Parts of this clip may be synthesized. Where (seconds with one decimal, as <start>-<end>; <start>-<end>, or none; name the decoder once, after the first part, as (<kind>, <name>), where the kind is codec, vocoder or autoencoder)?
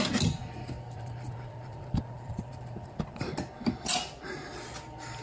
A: none